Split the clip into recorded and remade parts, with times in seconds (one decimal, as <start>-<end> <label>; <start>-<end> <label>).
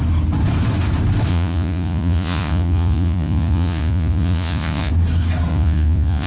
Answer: 0.0-1.3 recorded; 1.3-4.9 remade; 4.9-5.5 recorded; 5.5-6.3 remade